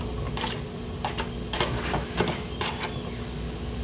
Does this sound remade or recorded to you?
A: recorded